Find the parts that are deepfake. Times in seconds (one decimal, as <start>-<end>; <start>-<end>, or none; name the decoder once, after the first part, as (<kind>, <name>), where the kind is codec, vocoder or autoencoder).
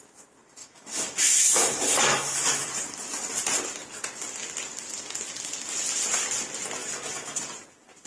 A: 0.6-2.7 (autoencoder, DAC-VAE); 6.8-7.4